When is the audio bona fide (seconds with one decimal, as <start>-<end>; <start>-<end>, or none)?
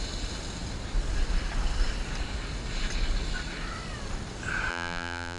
0.0-4.7